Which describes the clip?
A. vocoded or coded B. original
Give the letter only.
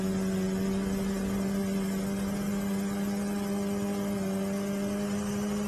B